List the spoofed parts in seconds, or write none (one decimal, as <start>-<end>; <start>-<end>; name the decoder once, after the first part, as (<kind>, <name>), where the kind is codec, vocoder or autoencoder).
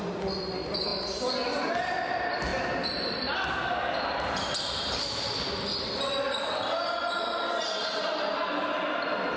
none